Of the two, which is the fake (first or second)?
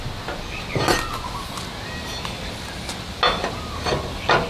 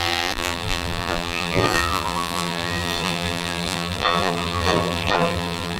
second